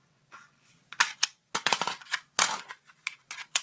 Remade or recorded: remade